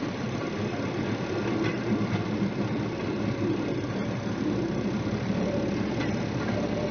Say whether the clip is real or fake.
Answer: fake